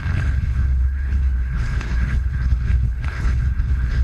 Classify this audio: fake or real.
fake